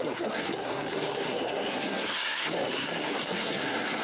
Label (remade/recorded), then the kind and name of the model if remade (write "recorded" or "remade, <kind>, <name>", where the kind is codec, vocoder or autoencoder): remade, codec, SNAC